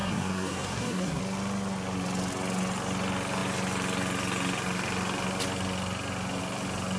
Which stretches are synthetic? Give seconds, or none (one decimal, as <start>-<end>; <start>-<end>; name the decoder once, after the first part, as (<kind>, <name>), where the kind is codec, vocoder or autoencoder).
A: 0.0-1.2 (codec, SNAC)